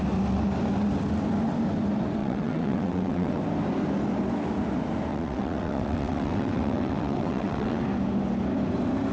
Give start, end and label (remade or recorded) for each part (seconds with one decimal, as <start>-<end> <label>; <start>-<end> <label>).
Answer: 0.0-2.2 recorded; 2.2-3.4 remade; 3.4-5.1 recorded; 5.1-7.8 remade; 7.8-9.1 recorded